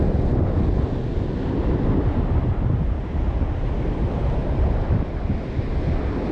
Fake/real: real